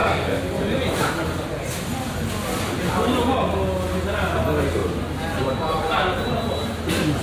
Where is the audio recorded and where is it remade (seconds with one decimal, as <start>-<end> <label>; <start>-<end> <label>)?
0.0-7.2 recorded